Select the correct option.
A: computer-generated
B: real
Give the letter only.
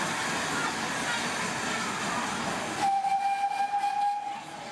B